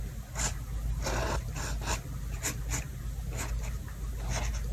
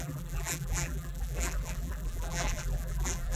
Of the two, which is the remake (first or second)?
second